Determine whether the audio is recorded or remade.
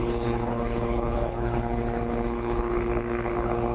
remade